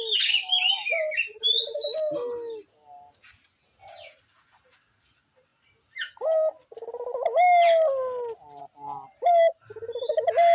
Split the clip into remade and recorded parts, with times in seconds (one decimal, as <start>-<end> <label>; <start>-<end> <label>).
0.0-10.5 recorded